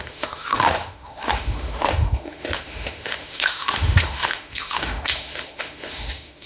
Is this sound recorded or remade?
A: remade